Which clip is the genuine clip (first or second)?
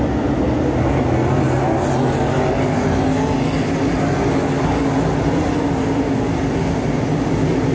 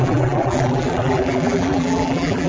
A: first